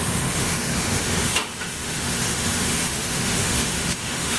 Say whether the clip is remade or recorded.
remade